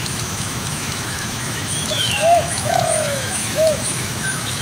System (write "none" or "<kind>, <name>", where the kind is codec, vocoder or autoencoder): autoencoder, DAC-VAE